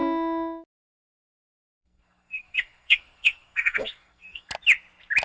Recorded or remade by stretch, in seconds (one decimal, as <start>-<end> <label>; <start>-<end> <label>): 0.0-1.5 recorded; 1.5-4.5 remade; 4.5-5.2 recorded